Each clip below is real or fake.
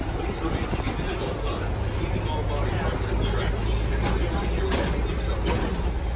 real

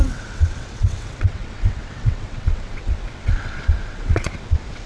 fake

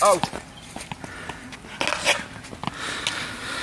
real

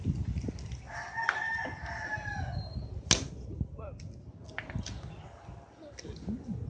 real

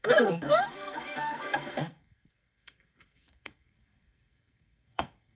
fake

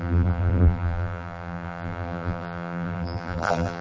fake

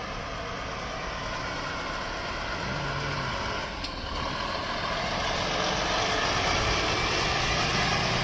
real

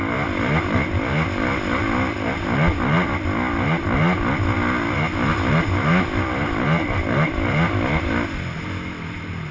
real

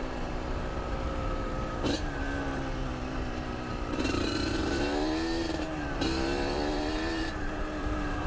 fake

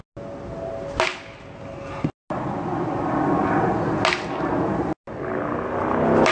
real